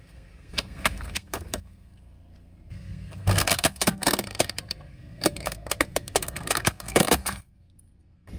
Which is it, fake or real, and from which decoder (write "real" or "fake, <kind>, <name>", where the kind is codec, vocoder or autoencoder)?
fake, codec, SNAC